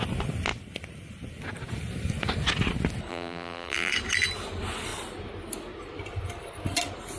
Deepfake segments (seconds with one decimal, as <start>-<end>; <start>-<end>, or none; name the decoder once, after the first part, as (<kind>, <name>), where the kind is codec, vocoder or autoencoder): 3.1-3.9 (vocoder, BigVGAN v2)